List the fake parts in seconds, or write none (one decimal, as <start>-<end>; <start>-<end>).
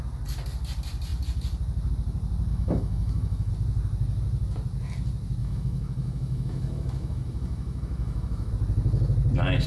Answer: 2.5-3.5; 5.4-8.5